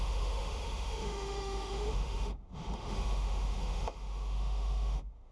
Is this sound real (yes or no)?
no